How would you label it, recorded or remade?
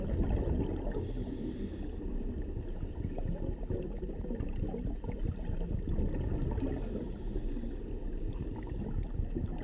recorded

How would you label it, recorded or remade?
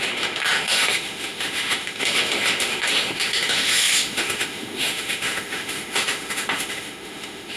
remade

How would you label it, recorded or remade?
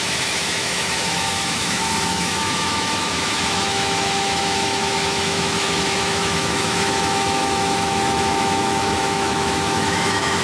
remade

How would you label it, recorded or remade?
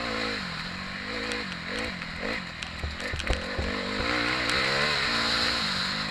recorded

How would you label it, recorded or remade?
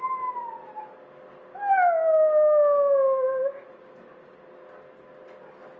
recorded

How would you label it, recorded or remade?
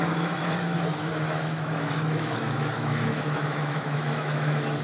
remade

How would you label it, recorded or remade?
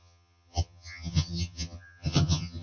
remade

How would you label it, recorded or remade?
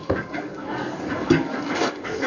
remade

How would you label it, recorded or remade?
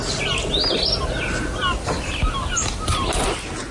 recorded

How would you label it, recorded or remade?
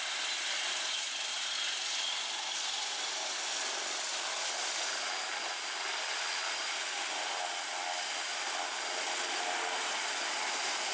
recorded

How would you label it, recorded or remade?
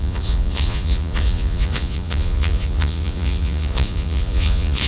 remade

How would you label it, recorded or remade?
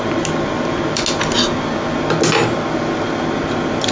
recorded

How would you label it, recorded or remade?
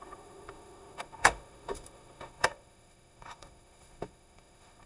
remade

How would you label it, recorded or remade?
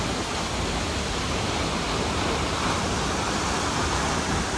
recorded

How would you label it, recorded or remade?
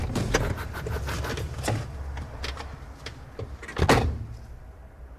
recorded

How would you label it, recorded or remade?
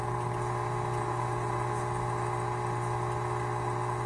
recorded